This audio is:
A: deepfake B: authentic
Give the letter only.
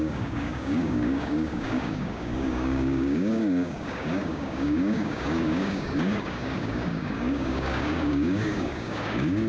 A